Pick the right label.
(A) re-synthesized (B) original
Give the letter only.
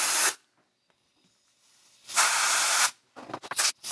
B